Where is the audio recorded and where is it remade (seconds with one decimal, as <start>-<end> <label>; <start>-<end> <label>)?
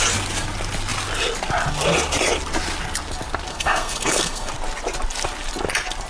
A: 0.0-3.5 recorded; 3.5-4.5 remade; 4.5-6.1 recorded